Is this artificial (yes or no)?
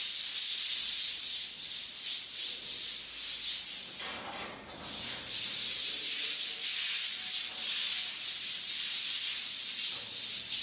no